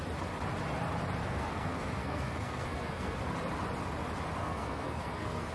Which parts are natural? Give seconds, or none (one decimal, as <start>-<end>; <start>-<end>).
0.0-1.2; 3.2-4.4

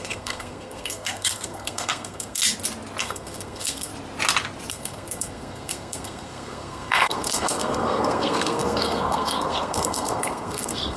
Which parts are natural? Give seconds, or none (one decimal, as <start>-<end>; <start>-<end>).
2.4-3.0; 3.9-4.7

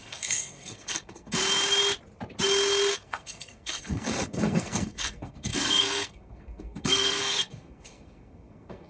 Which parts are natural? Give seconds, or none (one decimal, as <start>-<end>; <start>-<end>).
1.4-2.9

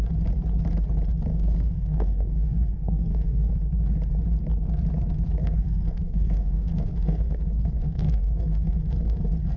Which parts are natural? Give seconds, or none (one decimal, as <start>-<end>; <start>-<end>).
0.0-1.3; 3.5-5.4; 9.2-9.6

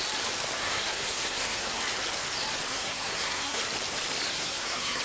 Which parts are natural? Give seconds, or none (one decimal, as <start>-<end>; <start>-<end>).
0.0-0.6; 1.8-2.7; 3.6-4.3

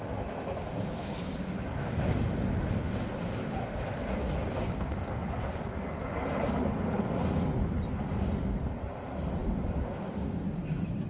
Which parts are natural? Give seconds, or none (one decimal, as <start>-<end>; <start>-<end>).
0.0-11.1

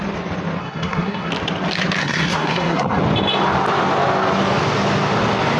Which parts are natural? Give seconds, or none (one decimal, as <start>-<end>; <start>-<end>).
0.0-0.6; 1.3-2.0; 3.0-5.6